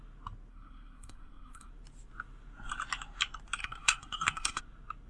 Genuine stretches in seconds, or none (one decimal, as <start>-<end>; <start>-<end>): 0.0-0.5; 1.7-3.6; 4.6-5.1